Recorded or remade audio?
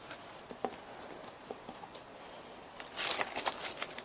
recorded